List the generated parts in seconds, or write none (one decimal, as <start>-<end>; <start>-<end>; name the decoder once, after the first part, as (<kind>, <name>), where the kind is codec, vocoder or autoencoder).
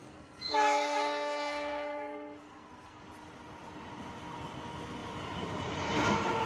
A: 0.0-3.0 (codec, SNAC)